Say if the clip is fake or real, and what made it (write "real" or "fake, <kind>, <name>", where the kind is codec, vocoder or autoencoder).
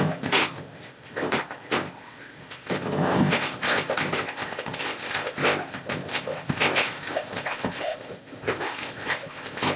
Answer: fake, codec, ZipCodec